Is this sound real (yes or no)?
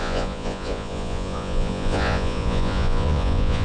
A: no